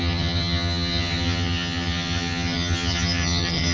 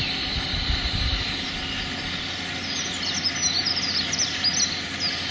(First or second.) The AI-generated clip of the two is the first